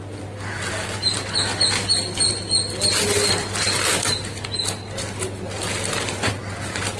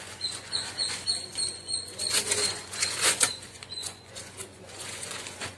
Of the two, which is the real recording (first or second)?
first